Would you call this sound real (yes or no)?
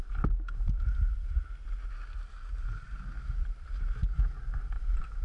yes